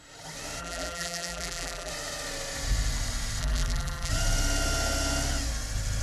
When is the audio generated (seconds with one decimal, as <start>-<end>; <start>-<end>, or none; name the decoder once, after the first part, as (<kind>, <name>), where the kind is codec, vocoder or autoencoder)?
0.6-1.9 (vocoder, BigVGAN v2); 3.4-4.1